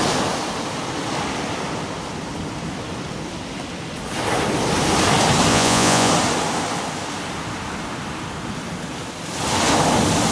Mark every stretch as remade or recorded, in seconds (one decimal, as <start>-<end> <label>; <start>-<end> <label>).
0.0-5.5 recorded; 5.5-6.1 remade; 6.1-10.3 recorded